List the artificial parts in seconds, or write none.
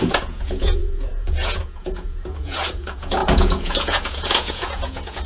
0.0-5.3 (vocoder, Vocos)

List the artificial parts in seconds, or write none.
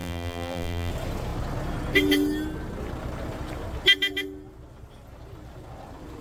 0.0-0.9 (vocoder, BigVGAN v2)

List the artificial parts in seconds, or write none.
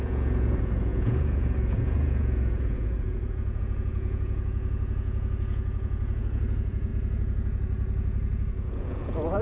0.0-9.4 (vocoder, Vocos)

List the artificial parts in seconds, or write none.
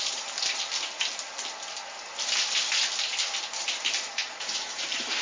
0.0-0.7 (vocoder, BigVGAN v2); 3.8-5.2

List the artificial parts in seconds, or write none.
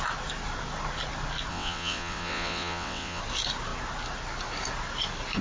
1.5-3.2 (vocoder, WaveNeXt)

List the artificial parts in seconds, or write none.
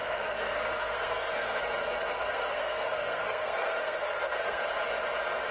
0.0-1.6 (codec, SNAC); 2.1-4.6